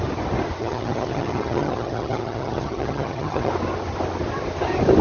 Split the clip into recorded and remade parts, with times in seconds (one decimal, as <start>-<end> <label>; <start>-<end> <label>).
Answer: 0.0-0.6 recorded; 0.6-3.5 remade; 3.5-5.0 recorded